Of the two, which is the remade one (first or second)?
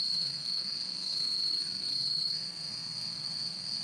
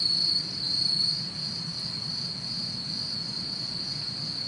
first